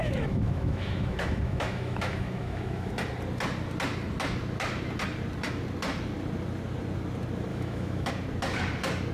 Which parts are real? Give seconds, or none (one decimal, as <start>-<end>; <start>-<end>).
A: 2.9-7.5; 8.1-9.1